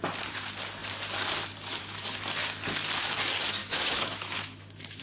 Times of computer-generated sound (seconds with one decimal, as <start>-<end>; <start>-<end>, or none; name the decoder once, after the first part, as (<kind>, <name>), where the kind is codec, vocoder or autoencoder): 3.6-5.0 (autoencoder, DAC-VAE)